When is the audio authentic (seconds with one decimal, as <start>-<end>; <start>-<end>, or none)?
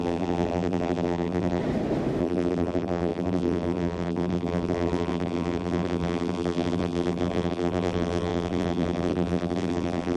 1.6-2.2